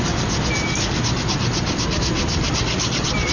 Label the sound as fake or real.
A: real